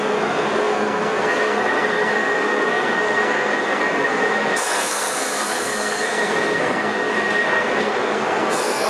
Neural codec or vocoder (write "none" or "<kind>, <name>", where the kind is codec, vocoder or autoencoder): codec, SNAC